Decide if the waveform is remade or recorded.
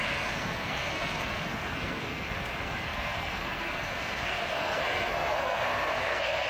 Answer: remade